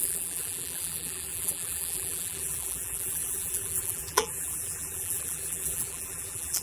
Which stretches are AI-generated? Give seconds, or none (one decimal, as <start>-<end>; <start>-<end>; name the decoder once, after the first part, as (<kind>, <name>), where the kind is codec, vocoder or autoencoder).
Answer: 0.0-6.6 (vocoder, BigVGAN v2)